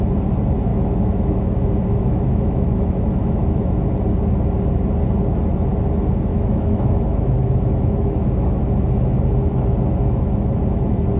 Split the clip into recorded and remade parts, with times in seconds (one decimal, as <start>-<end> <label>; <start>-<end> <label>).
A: 0.0-0.7 recorded; 0.7-3.9 remade; 3.9-6.3 recorded; 6.3-8.6 remade; 8.6-11.2 recorded